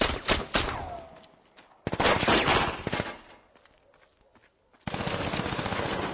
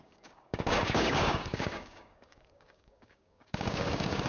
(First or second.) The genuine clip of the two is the first